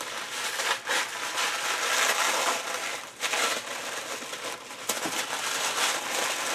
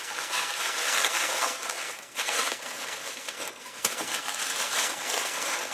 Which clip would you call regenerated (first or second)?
second